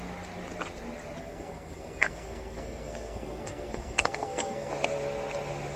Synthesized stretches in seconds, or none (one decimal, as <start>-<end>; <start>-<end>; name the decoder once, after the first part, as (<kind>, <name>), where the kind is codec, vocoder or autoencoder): 1.2-4.7 (codec, SNAC)